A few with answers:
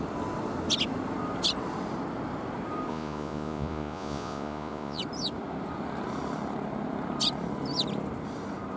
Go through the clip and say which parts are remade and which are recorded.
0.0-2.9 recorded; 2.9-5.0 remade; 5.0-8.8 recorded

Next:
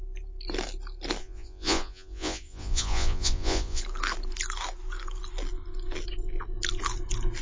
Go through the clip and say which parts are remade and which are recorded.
0.0-1.2 recorded; 1.2-3.8 remade; 3.8-7.4 recorded

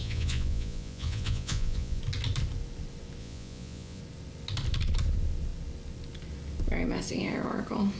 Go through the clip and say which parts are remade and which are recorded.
0.0-2.0 remade; 2.0-3.2 recorded; 3.2-4.0 remade; 4.0-8.0 recorded

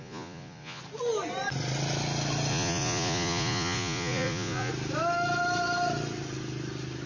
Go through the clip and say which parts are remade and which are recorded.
0.0-0.8 remade; 0.8-2.5 recorded; 2.5-4.7 remade; 4.7-7.1 recorded

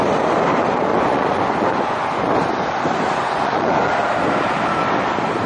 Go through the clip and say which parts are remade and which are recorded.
0.0-0.9 recorded; 0.9-2.3 remade; 2.3-3.2 recorded; 3.2-3.9 remade; 3.9-5.5 recorded

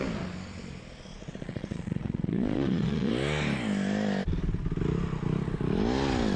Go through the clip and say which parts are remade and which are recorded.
0.0-1.1 recorded; 1.1-3.1 remade; 3.1-6.4 recorded